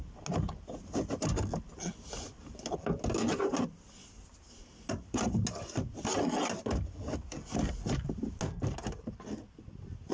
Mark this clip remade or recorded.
recorded